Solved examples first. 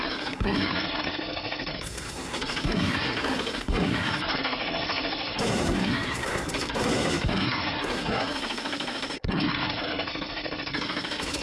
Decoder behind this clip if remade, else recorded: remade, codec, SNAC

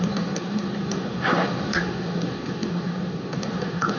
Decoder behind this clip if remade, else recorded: remade, codec, SNAC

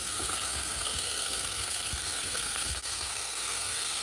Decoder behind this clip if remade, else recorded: remade, codec, SNAC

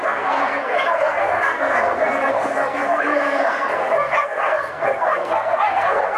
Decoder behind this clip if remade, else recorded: remade, codec, SNAC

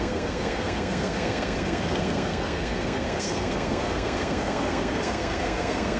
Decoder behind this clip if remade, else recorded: remade, codec, SNAC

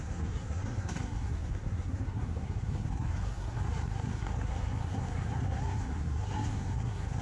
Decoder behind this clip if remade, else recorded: remade, codec, SNAC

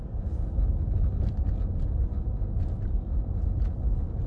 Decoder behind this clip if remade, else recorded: recorded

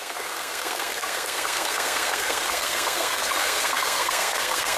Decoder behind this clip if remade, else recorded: remade, codec, SNAC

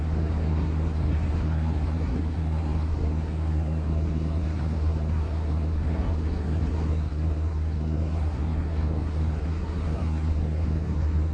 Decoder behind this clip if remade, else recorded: remade, codec, SNAC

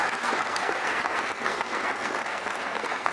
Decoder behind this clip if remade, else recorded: remade, codec, SNAC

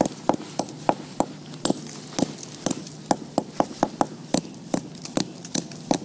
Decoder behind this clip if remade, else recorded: recorded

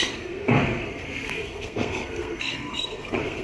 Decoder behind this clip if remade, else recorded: remade, codec, SNAC